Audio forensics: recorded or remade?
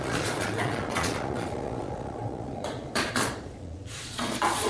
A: remade